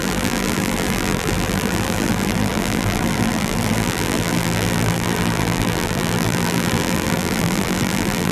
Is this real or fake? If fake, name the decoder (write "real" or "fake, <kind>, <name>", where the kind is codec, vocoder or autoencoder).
fake, vocoder, BigVGAN v2